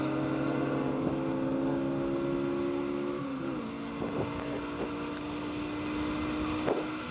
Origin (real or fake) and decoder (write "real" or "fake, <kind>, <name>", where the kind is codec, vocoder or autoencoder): real